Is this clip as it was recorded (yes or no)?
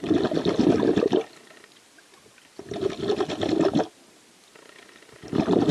yes